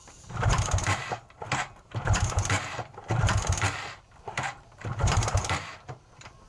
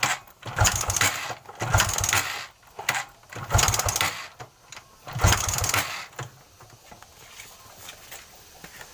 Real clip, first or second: second